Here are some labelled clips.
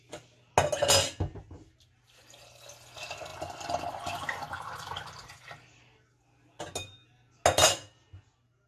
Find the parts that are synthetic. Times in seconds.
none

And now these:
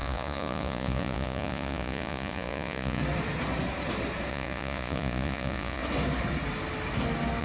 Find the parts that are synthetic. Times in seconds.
0.0-3.0 (vocoder, Vocos); 4.3-5.8

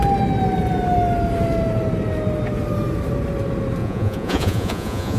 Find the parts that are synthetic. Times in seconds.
3.8-5.2 (vocoder, Vocos)